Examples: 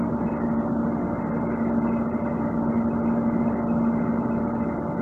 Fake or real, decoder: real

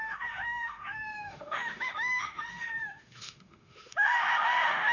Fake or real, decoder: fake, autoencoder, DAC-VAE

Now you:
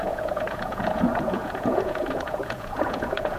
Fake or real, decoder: fake, vocoder, Vocos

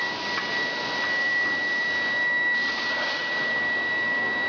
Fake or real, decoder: real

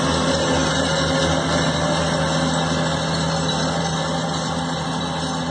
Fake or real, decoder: real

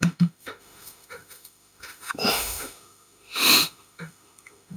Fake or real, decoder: fake, autoencoder, DAC-VAE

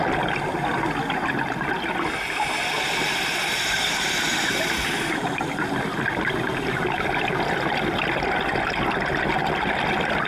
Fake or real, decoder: real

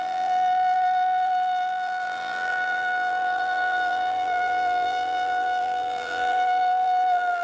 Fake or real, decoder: fake, vocoder, BigVGAN v2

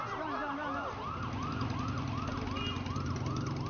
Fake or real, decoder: real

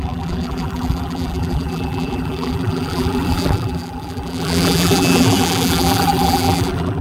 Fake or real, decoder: fake, vocoder, BigVGAN v2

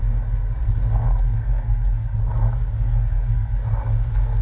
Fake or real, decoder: fake, codec, SNAC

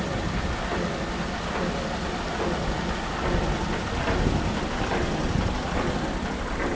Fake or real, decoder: real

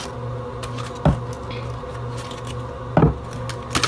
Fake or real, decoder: real